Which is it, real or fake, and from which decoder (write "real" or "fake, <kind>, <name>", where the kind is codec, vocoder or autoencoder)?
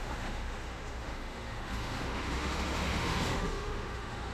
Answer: fake, autoencoder, DAC-VAE